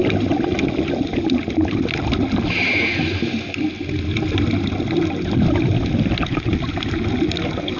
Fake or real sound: real